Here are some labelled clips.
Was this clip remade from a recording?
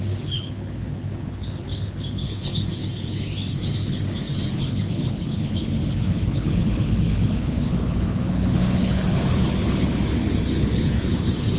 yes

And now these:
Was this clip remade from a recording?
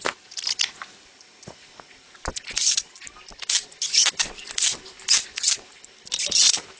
no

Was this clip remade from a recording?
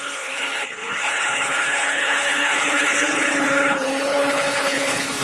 yes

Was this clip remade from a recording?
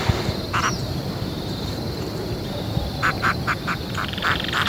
yes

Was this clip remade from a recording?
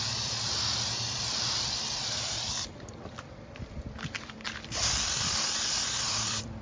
yes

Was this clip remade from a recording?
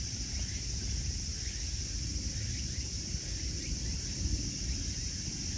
no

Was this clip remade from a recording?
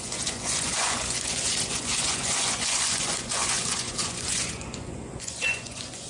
yes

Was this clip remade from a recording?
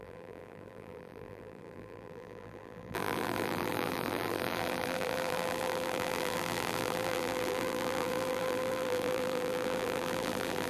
yes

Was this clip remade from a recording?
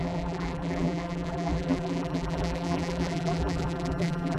yes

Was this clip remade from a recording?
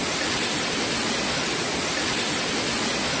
no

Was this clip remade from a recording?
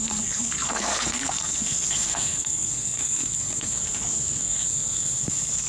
yes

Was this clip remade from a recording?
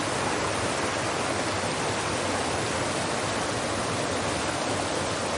no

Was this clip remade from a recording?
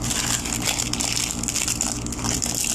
no